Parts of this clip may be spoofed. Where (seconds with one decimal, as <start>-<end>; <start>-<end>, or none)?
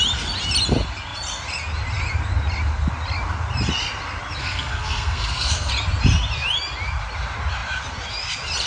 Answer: 4.4-5.7